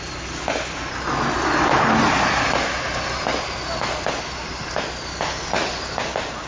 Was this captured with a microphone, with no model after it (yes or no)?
yes